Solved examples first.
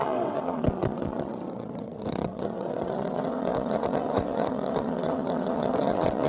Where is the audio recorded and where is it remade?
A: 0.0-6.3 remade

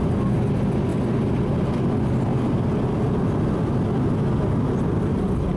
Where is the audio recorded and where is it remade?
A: 0.0-5.6 recorded

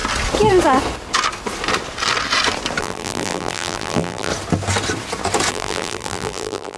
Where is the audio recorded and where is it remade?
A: 0.0-2.8 recorded; 2.8-4.3 remade; 4.3-5.5 recorded; 5.5-6.8 remade

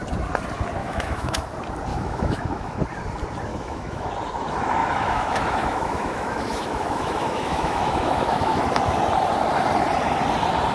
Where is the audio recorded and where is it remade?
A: 0.0-0.8 recorded; 0.8-1.5 remade; 1.5-1.9 recorded; 1.9-2.8 remade; 2.8-3.5 recorded; 3.5-4.1 remade; 4.1-4.8 recorded; 4.8-8.6 remade; 8.6-10.7 recorded